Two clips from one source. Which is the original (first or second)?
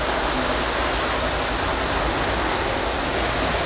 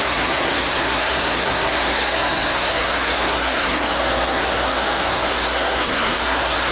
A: first